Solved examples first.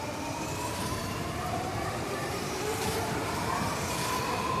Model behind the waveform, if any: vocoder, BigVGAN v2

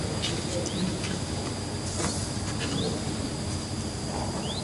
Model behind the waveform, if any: none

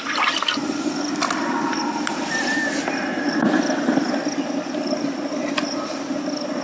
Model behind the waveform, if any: none